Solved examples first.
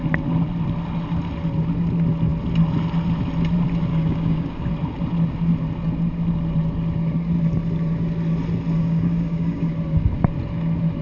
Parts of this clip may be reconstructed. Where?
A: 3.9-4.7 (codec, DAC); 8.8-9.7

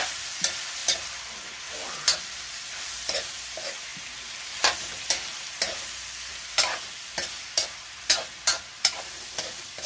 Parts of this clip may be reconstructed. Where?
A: 0.0-3.9 (vocoder, BigVGAN v2); 4.8-9.9

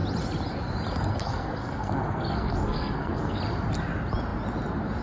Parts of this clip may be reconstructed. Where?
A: 1.1-3.4 (codec, SNAC)

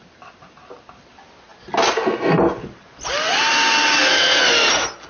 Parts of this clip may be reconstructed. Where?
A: none